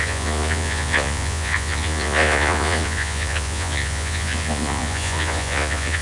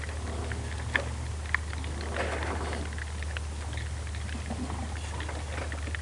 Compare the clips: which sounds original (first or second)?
second